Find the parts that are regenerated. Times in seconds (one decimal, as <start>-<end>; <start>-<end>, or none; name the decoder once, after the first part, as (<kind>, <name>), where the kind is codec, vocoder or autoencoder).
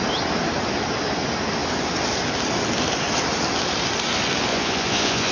4.5-5.3 (vocoder, Vocos)